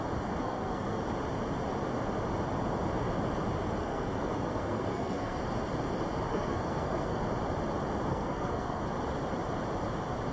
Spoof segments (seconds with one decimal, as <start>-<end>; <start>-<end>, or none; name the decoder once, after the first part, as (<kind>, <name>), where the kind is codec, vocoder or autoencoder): 0.4-1.0 (codec, SNAC); 3.8-5.4; 6.3-7.2; 8.1-8.8